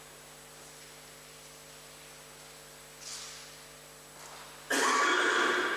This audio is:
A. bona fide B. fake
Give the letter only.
A